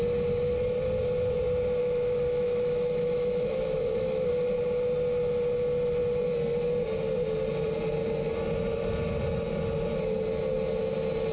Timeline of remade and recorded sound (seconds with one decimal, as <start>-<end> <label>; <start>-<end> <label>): 0.0-1.8 recorded; 1.8-4.3 remade; 4.3-11.3 recorded